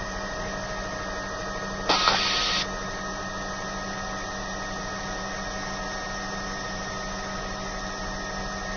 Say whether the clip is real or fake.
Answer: real